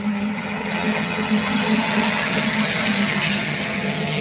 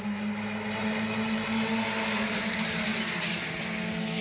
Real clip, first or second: second